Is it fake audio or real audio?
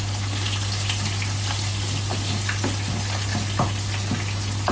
real